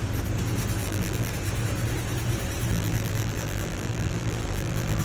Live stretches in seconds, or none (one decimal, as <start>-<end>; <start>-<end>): 0.0-0.8; 1.3-2.7